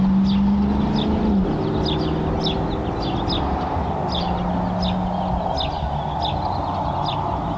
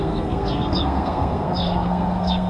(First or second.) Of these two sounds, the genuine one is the first